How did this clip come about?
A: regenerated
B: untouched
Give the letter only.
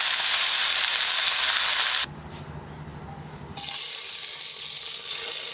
B